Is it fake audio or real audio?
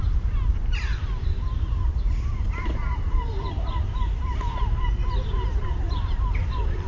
fake